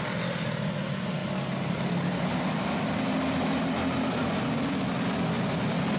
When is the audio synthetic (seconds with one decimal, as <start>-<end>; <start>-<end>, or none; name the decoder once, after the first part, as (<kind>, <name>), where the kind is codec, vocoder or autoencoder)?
none